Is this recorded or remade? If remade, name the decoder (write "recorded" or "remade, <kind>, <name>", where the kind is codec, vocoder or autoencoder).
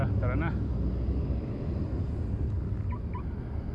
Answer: recorded